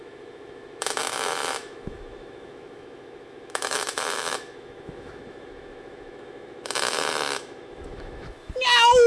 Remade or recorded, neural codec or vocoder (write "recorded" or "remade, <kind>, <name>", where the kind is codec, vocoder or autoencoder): remade, autoencoder, DAC-VAE